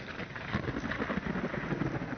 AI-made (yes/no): no